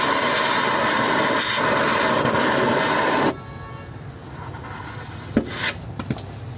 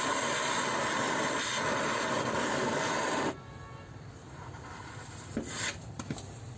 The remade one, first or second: second